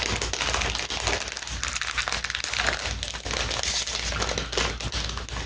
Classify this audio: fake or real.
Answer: real